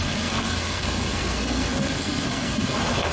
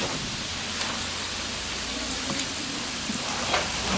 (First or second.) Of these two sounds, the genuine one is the second